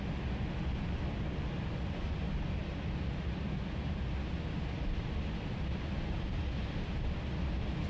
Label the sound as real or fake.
real